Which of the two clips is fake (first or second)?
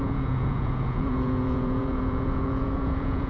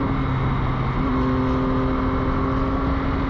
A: first